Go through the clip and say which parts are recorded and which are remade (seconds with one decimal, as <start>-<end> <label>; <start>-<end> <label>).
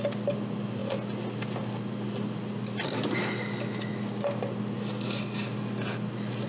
0.0-6.5 recorded